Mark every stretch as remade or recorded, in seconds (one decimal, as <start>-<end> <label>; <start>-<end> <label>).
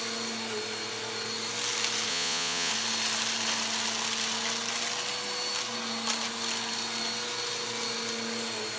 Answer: 0.0-2.1 recorded; 2.1-2.7 remade; 2.7-8.8 recorded